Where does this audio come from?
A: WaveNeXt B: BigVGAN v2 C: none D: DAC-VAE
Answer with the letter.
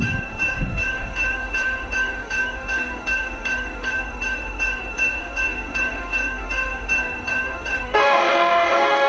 D